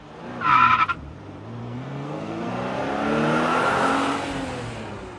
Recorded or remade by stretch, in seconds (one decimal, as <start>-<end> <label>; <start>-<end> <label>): 0.0-1.6 recorded; 1.6-2.5 remade; 2.5-5.2 recorded